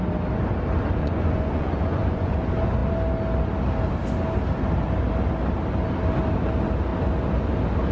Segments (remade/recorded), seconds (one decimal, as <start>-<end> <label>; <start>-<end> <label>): 0.0-1.0 recorded; 1.0-2.4 remade; 2.4-7.9 recorded